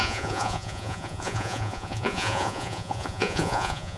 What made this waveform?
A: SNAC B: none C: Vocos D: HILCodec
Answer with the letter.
C